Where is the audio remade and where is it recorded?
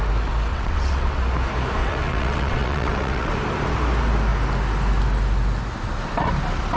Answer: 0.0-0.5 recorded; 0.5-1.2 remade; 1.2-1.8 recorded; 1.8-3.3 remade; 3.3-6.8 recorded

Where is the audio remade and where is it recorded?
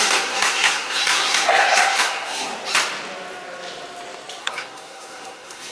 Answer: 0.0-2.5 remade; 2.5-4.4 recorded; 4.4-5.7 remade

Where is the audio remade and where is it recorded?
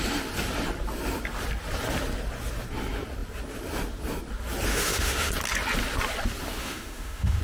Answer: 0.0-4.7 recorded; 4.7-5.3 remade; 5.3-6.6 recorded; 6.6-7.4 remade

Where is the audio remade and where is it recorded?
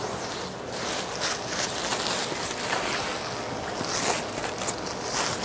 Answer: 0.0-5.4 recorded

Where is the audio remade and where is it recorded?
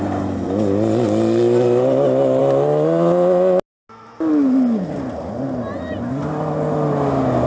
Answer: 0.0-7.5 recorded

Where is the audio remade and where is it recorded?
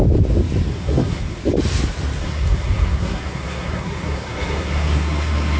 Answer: 0.0-0.7 recorded; 0.7-1.4 remade; 1.4-2.2 recorded; 2.2-5.6 remade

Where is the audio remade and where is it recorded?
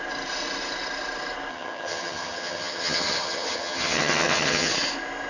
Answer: 0.0-1.5 recorded; 1.5-4.7 remade; 4.7-5.3 recorded